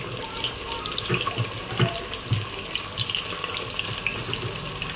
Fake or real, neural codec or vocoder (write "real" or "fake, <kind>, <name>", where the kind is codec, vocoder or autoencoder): real